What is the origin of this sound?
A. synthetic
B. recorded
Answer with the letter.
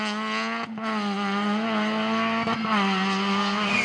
B